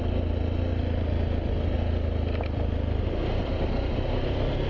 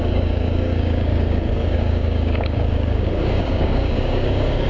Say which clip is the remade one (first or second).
second